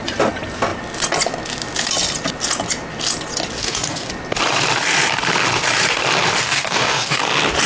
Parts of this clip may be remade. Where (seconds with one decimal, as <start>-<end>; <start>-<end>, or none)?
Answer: 3.6-4.1; 6.4-7.2